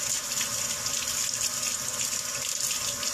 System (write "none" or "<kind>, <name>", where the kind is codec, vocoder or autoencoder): none